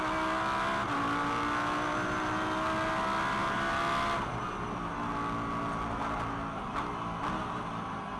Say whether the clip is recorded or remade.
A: recorded